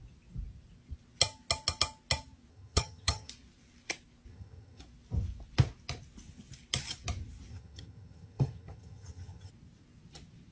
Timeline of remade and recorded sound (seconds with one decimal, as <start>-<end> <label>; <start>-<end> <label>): 0.0-2.5 recorded; 2.5-3.3 remade; 3.3-4.3 recorded; 4.3-4.8 remade; 4.8-7.5 recorded; 7.5-9.5 remade; 9.5-10.5 recorded